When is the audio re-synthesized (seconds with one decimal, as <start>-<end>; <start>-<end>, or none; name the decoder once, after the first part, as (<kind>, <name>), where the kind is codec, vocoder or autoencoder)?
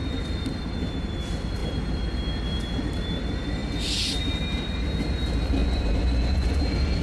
5.6-6.6 (vocoder, Vocos)